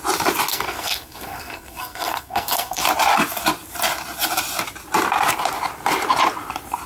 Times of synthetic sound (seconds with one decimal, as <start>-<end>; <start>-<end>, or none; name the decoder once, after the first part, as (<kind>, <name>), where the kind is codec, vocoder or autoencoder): 0.5-2.8 (codec, SNAC)